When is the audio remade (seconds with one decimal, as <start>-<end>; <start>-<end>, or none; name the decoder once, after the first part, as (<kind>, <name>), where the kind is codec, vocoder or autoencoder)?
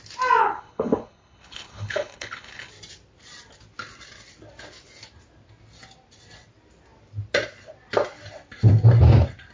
0.4-2.7 (codec, HILCodec)